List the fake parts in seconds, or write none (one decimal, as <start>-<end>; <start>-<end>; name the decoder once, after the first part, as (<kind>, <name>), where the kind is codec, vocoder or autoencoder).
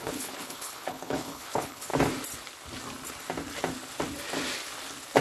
0.0-1.9 (codec, HILCodec)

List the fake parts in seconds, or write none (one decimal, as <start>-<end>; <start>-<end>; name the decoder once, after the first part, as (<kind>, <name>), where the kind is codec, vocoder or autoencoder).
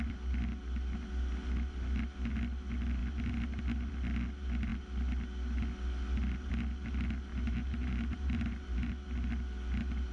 7.3-8.9 (vocoder, BigVGAN v2)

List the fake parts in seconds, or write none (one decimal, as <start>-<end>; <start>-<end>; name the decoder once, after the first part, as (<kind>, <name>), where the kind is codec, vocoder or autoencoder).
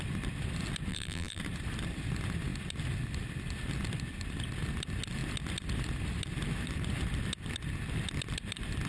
0.9-1.4 (vocoder, BigVGAN v2)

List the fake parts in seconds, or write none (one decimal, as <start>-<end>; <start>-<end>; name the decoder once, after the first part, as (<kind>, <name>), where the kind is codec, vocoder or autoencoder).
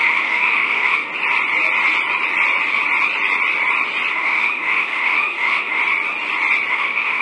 0.0-1.1 (autoencoder, DAC-VAE); 4.1-5.8; 6.7-7.2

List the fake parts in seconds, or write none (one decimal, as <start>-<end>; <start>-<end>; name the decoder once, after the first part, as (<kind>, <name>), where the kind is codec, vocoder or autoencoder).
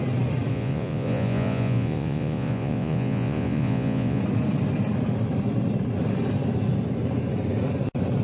0.5-4.2 (vocoder, Vocos)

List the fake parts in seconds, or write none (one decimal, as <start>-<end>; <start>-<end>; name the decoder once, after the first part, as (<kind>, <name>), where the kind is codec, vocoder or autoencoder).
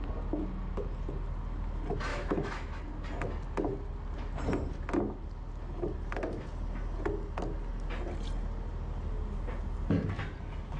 2.1-2.8 (autoencoder, DAC-VAE)